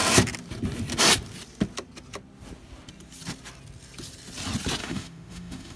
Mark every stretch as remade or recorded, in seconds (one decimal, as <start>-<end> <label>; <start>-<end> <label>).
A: 0.0-4.8 recorded; 4.8-5.8 remade